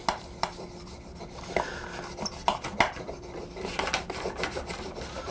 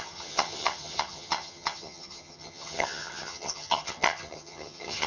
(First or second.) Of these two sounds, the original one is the first